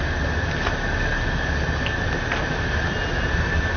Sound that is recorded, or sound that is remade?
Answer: recorded